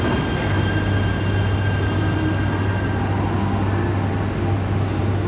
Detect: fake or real real